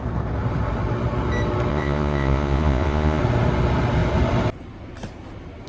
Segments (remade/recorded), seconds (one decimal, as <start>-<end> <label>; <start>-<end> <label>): 0.0-1.7 recorded; 1.7-3.2 remade; 3.2-5.7 recorded